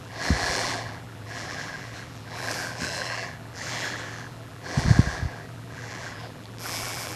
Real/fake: fake